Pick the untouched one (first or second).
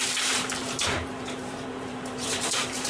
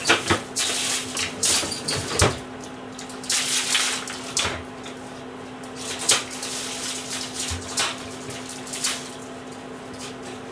second